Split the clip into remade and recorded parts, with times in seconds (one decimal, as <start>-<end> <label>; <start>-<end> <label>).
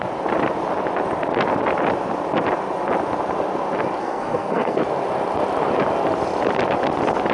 0.0-4.0 recorded; 4.0-4.8 remade; 4.8-7.3 recorded